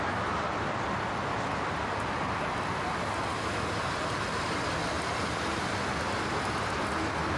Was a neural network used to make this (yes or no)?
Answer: no